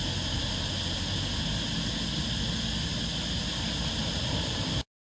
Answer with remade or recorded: recorded